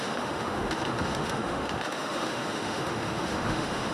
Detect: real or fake fake